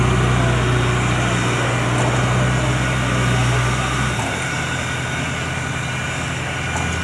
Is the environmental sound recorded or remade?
recorded